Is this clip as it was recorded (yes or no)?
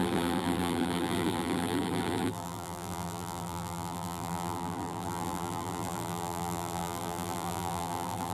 no